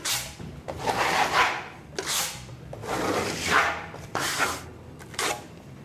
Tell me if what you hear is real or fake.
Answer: real